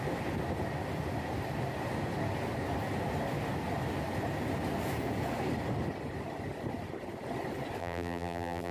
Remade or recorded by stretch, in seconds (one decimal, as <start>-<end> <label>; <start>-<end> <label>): 0.0-7.8 recorded; 7.8-8.7 remade